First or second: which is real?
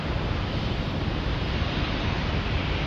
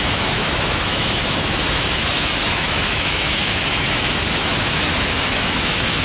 first